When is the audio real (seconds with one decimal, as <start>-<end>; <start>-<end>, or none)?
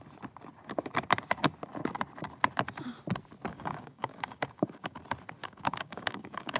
0.0-3.5; 5.0-5.4